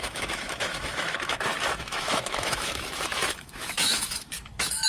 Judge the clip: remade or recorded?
remade